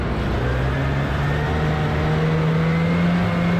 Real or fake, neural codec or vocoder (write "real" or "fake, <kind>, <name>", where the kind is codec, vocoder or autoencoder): real